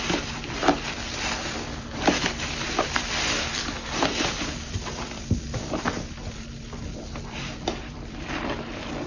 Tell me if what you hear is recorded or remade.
remade